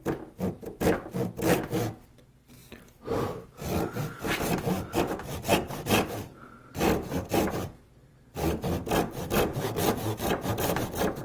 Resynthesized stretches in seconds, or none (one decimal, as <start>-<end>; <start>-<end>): none